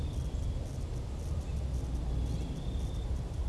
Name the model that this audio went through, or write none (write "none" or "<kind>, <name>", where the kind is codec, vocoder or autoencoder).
none